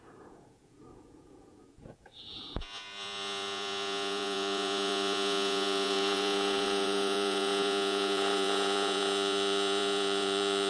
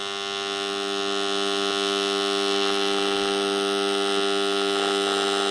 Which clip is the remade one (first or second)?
first